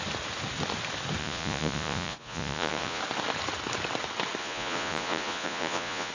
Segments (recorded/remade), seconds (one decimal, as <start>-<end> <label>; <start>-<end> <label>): 0.0-1.2 recorded; 1.2-3.0 remade; 3.0-4.4 recorded; 4.4-6.1 remade